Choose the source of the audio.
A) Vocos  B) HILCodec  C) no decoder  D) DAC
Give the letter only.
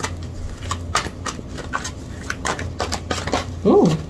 C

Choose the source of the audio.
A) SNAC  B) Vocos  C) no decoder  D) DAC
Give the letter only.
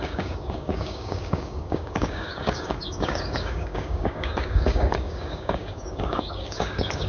D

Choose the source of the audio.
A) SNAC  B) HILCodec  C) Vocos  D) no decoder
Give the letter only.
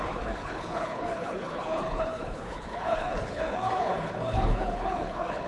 B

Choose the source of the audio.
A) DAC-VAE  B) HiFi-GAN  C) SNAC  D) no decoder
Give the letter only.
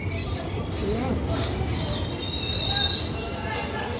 D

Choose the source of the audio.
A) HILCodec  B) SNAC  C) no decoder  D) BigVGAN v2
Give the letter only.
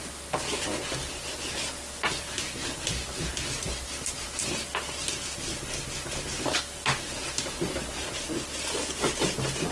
C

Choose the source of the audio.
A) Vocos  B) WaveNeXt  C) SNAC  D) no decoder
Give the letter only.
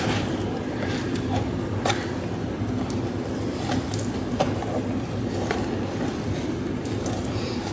D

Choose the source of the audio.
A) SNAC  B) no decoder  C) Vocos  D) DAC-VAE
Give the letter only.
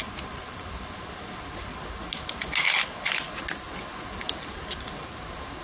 B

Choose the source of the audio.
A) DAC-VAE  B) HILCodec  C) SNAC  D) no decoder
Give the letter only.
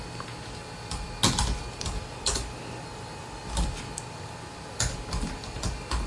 D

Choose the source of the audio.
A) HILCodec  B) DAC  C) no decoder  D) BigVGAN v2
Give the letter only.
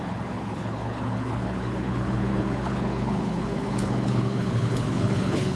A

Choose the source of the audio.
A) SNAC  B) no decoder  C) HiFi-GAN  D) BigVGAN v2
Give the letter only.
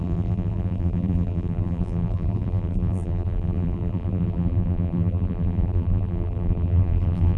D